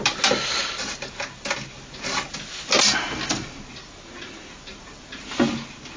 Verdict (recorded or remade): recorded